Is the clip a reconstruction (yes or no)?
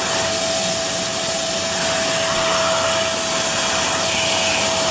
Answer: no